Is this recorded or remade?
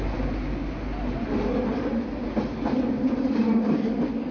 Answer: recorded